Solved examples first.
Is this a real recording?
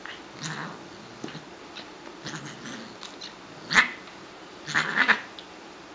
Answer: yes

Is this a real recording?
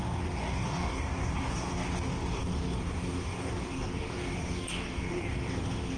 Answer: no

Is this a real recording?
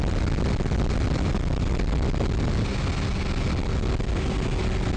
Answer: yes